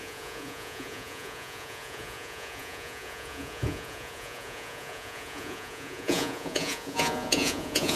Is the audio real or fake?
fake